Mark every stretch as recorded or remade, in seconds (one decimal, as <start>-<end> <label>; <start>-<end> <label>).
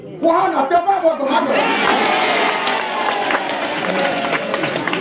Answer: 0.0-1.0 recorded; 1.0-5.0 remade